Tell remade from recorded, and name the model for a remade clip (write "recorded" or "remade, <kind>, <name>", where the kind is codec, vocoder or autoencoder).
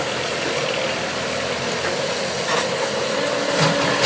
recorded